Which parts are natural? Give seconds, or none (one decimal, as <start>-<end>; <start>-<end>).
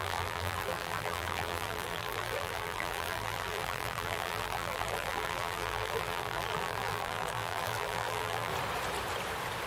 8.5-9.7